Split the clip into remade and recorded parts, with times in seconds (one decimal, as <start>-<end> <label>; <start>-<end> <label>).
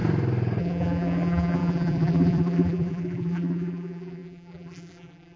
0.0-0.6 recorded; 0.6-5.4 remade